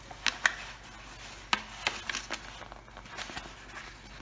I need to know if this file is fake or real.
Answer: real